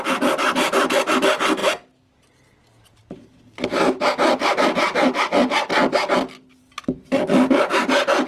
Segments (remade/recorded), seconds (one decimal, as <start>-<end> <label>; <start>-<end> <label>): 0.0-8.3 recorded